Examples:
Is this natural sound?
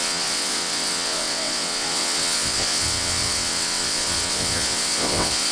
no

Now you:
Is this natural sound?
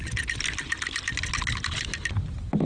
yes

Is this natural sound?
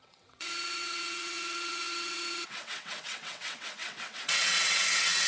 no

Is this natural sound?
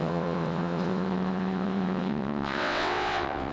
no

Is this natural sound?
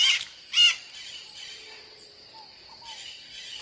yes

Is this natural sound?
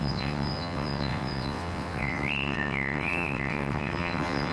no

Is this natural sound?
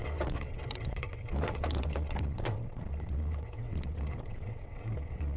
no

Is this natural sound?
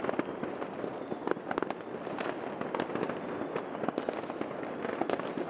yes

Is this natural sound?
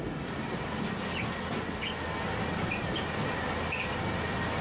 yes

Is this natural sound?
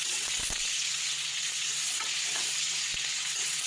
no